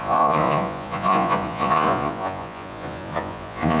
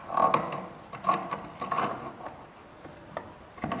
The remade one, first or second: first